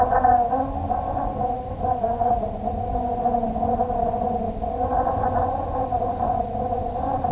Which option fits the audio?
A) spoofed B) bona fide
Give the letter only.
B